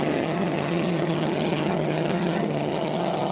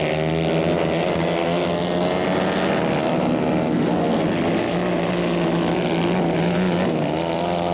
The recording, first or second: second